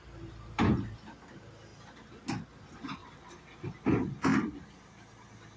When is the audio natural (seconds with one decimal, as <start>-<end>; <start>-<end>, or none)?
0.0-5.6